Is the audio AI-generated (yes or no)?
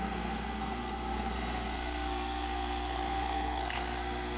yes